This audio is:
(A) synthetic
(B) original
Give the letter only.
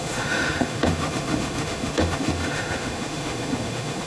A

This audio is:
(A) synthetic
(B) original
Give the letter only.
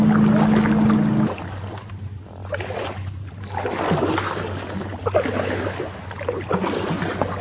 B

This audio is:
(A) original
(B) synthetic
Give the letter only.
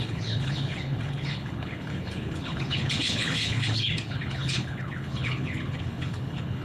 B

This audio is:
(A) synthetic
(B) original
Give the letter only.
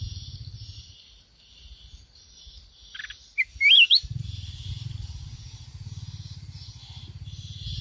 B